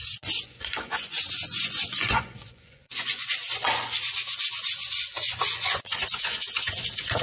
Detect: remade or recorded remade